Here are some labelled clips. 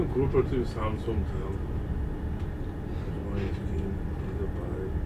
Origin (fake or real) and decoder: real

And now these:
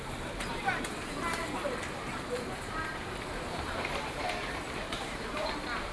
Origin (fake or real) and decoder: fake, vocoder, BigVGAN v2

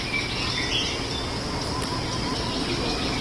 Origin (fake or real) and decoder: real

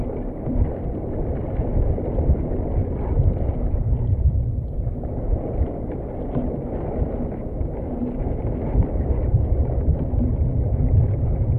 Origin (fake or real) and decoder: fake, vocoder, BigVGAN v2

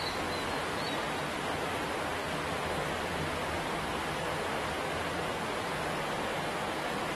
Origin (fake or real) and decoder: real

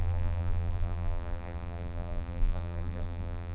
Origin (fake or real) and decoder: fake, vocoder, BigVGAN v2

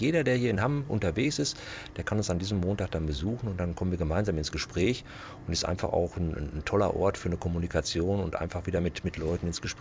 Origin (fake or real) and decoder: fake, vocoder, BigVGAN v2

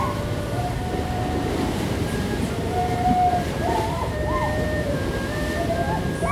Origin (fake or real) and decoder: fake, vocoder, BigVGAN v2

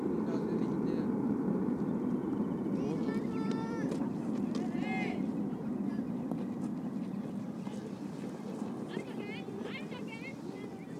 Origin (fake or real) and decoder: real